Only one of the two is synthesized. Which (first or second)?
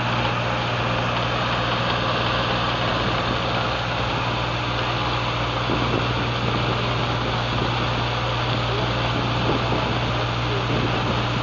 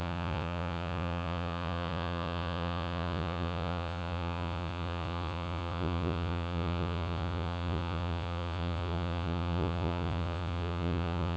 second